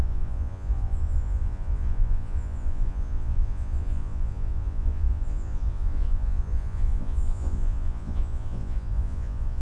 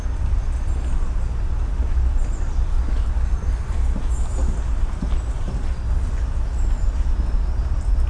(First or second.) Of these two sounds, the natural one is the second